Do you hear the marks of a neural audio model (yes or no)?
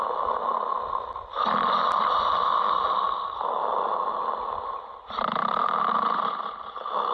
no